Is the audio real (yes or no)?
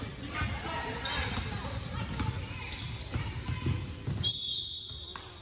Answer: yes